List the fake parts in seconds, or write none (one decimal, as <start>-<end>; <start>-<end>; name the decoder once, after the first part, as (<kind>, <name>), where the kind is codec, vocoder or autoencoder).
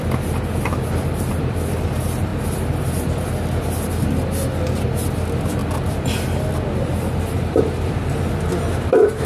none